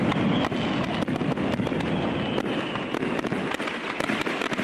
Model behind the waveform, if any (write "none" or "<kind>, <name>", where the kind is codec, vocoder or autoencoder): none